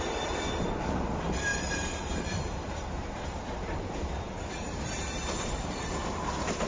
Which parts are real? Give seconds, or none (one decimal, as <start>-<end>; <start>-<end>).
0.0-1.5; 5.5-6.7